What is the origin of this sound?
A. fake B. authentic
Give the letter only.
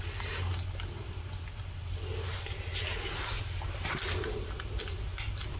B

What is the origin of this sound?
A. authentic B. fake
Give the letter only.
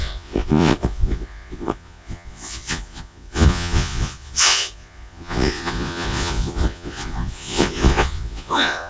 B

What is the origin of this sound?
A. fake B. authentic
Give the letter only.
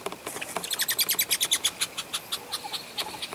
B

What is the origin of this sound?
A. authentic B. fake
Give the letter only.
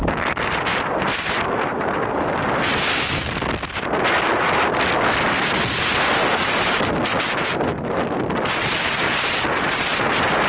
A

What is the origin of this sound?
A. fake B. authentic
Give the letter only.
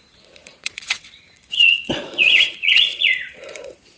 A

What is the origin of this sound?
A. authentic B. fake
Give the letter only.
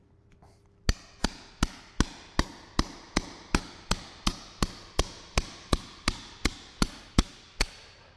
A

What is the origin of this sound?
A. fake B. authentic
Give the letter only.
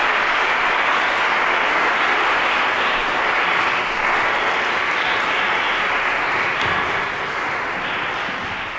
B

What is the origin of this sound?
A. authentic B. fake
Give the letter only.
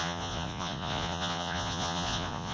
B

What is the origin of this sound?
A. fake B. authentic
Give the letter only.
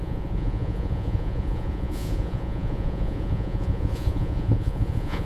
A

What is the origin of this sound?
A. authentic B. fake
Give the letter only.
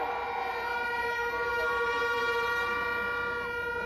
A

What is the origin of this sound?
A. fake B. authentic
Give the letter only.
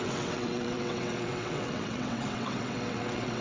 A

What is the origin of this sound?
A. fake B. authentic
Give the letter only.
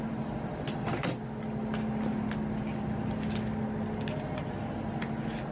B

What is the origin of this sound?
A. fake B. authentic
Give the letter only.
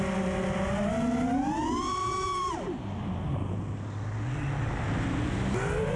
B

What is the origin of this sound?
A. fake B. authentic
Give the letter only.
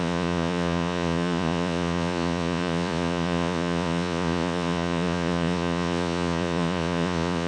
A